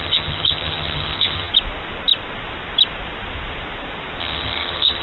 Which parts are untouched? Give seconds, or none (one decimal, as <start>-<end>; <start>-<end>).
1.5-4.2